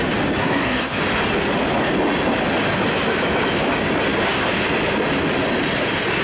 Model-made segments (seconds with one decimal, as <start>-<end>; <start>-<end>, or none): 0.4-1.0